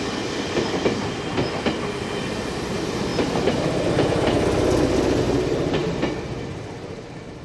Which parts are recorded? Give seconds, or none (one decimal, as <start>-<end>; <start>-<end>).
0.0-7.4